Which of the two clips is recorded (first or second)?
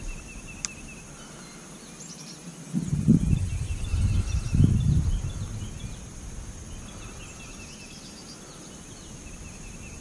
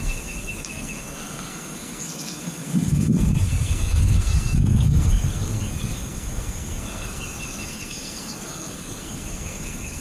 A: first